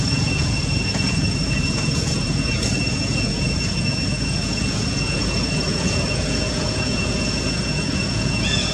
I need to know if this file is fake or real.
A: fake